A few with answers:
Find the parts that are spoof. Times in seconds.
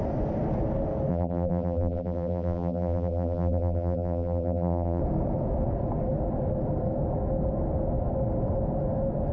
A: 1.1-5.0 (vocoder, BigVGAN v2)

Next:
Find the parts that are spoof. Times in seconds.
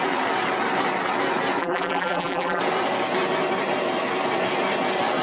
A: 1.6-2.6 (vocoder, BigVGAN v2)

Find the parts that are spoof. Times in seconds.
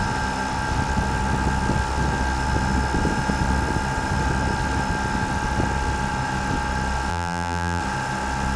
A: 7.1-7.8 (vocoder, BigVGAN v2)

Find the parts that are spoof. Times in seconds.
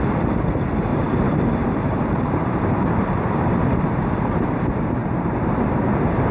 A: 0.9-3.4 (vocoder, BigVGAN v2); 5.0-5.8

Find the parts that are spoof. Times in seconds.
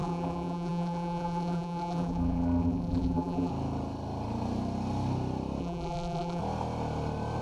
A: 0.0-3.5 (vocoder, BigVGAN v2); 5.6-6.4